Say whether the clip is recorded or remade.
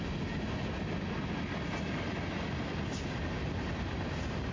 recorded